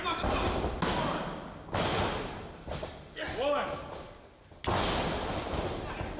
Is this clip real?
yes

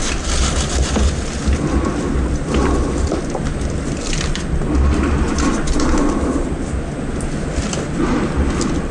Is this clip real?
yes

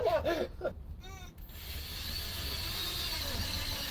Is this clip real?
yes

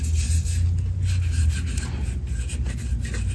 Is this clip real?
yes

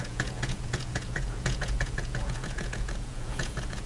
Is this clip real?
no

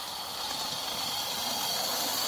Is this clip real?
yes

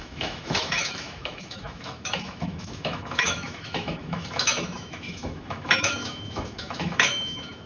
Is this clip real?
no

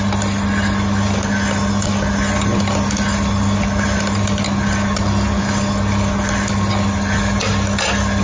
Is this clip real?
yes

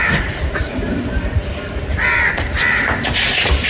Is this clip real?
yes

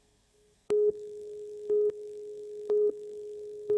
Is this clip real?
no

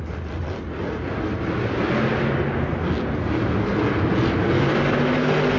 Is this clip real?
yes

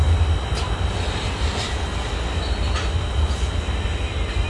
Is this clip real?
yes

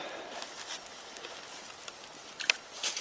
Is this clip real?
yes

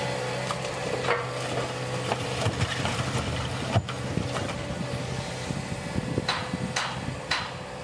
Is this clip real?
yes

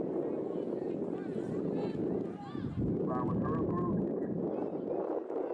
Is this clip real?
yes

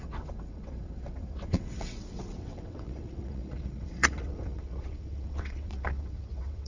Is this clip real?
no